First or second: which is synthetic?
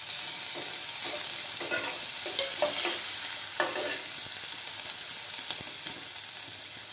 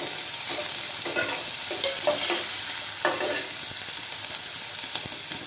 second